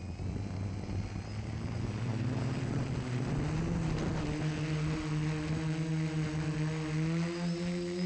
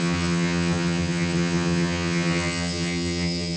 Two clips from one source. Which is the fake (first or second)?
second